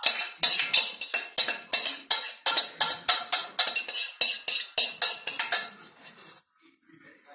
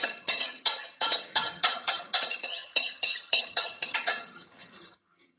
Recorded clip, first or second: first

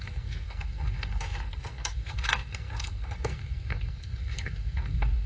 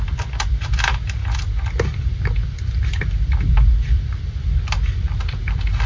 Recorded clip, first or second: second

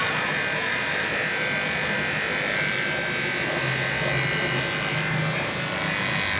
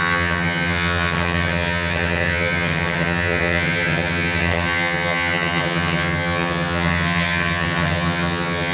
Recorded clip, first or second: first